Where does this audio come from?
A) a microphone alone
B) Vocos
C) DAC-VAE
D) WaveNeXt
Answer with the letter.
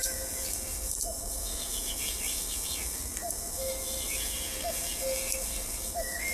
C